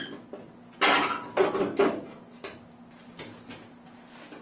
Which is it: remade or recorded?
recorded